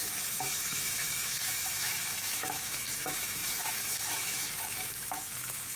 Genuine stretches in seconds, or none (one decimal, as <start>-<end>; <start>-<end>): none